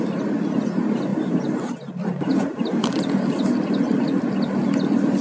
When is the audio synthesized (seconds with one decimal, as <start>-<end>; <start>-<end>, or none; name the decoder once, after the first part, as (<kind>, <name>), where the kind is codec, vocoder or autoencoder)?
1.1-1.9 (vocoder, BigVGAN v2); 2.3-4.2